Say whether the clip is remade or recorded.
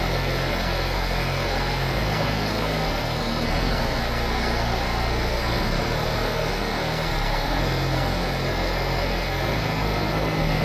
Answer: remade